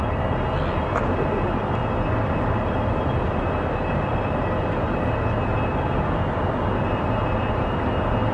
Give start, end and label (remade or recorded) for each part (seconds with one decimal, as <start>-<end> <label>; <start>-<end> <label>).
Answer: 0.0-8.3 recorded